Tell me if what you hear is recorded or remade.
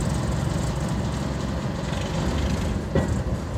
recorded